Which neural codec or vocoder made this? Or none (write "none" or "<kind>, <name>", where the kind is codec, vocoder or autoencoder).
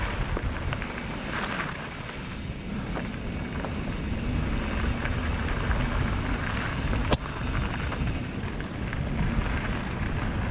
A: none